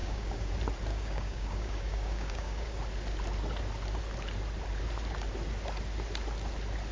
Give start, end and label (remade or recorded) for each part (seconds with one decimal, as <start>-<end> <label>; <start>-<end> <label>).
0.0-0.5 remade; 0.5-0.9 recorded; 0.9-2.8 remade; 2.8-6.9 recorded